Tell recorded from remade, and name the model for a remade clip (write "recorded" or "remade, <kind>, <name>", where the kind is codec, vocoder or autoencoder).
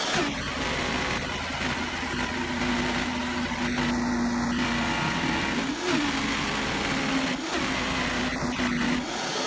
recorded